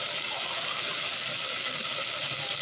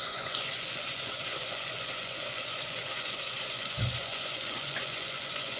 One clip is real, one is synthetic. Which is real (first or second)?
first